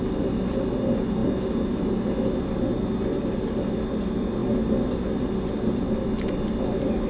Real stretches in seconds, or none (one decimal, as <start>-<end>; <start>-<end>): 0.0-7.1